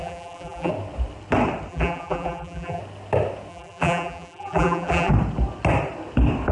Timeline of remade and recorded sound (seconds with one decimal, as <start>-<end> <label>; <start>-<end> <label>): 0.0-0.7 remade; 0.7-1.7 recorded; 1.7-2.8 remade; 2.8-3.5 recorded; 3.5-5.1 remade; 5.1-6.5 recorded